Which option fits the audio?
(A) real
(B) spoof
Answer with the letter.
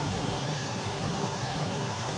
B